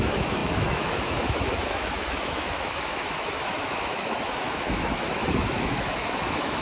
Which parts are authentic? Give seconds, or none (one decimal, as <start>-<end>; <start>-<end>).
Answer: none